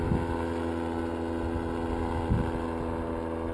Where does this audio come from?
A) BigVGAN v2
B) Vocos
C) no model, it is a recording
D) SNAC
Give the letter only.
C